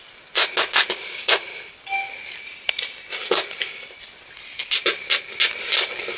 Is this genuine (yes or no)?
yes